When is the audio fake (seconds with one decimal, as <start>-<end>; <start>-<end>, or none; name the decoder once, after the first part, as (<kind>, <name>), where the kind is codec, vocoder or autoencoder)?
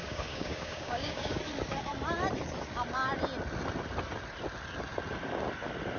0.0-1.4 (codec, DAC)